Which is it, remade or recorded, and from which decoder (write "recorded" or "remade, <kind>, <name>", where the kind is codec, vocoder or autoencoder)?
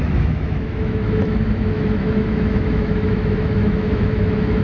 remade, autoencoder, DAC-VAE